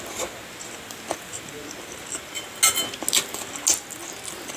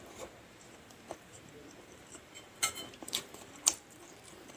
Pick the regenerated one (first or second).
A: second